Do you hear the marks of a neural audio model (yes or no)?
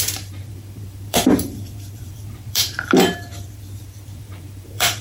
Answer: yes